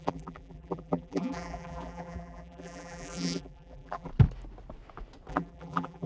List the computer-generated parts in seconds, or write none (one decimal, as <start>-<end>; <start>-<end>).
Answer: 0.0-4.1; 5.3-6.1